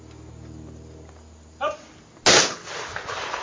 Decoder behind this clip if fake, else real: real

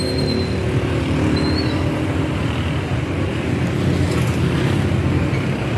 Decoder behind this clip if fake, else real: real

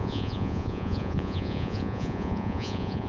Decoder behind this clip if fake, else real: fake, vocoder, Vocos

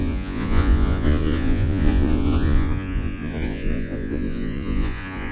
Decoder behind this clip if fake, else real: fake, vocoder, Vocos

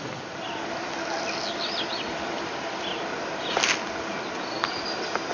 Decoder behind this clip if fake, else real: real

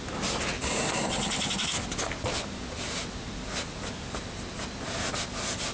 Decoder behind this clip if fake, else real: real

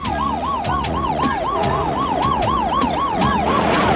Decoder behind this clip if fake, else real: fake, vocoder, Vocos